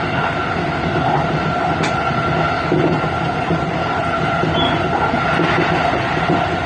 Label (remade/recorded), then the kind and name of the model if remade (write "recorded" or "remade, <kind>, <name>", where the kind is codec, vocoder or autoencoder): recorded